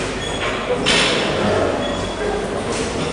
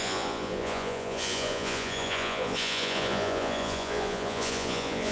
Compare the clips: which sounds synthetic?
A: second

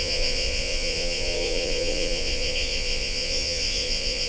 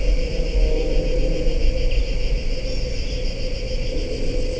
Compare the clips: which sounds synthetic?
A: first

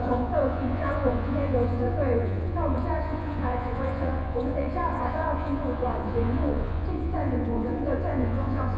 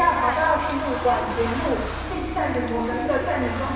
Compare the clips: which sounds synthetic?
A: first